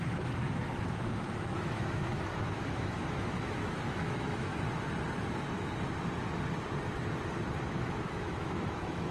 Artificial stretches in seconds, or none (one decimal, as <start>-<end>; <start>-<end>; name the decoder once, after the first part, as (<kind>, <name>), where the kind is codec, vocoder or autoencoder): 0.0-4.5 (autoencoder, DAC-VAE); 7.7-9.1